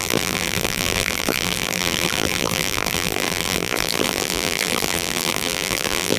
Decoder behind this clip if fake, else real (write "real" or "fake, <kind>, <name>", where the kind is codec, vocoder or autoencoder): fake, vocoder, BigVGAN v2